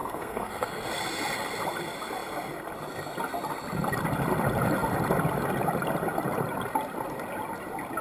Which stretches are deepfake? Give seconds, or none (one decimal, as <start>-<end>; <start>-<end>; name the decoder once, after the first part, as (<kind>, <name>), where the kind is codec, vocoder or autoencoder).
0.0-0.7 (codec, SNAC)